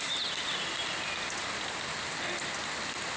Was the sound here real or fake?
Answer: real